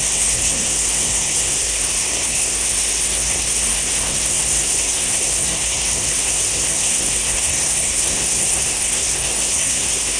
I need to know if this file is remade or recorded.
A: remade